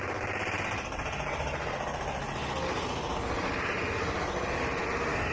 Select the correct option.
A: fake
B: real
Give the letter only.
B